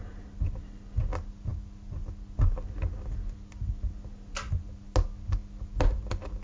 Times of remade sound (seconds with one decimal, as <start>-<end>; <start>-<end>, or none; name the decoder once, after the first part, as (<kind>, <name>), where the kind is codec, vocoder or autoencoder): none